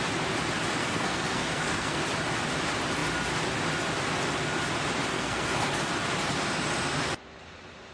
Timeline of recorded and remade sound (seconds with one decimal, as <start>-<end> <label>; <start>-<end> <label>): 0.0-0.8 recorded; 0.8-2.0 remade; 2.0-5.1 recorded; 5.1-5.7 remade; 5.7-7.9 recorded